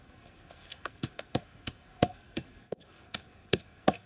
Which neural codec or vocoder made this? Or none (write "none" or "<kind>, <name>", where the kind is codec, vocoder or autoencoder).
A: codec, SNAC